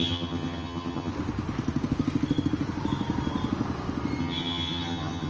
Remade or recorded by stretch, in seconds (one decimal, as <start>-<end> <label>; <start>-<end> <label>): 0.0-1.1 remade; 1.1-4.2 recorded; 4.2-5.3 remade